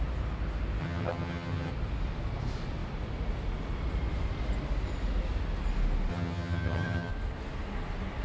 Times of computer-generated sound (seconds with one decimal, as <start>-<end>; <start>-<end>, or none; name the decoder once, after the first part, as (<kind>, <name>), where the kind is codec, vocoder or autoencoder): 0.8-1.7 (vocoder, HiFi-GAN); 6.1-7.1